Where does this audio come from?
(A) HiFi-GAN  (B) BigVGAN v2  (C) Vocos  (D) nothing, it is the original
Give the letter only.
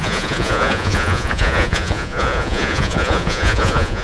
C